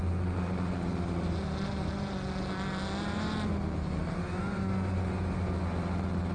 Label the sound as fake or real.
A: real